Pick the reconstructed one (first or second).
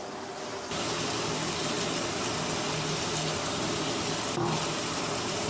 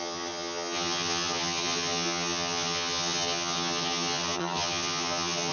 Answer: second